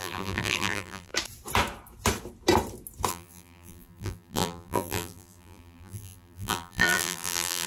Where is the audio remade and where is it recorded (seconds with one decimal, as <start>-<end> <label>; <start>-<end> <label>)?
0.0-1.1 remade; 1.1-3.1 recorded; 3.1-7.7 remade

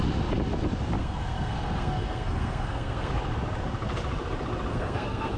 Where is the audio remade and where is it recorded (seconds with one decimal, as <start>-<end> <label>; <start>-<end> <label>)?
0.0-1.0 recorded; 1.0-3.1 remade; 3.1-4.7 recorded; 4.7-5.4 remade

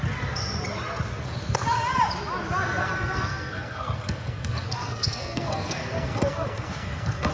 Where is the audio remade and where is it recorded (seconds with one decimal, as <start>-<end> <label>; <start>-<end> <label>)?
0.0-2.8 recorded; 2.8-7.3 remade